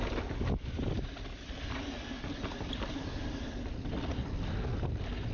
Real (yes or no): yes